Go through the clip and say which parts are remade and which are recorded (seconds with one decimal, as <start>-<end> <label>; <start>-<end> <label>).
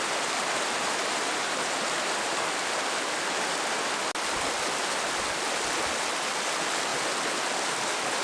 0.0-8.2 recorded